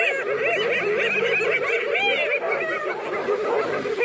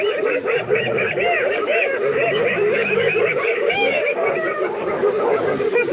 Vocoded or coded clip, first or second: second